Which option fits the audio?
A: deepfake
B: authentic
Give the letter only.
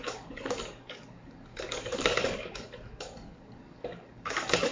A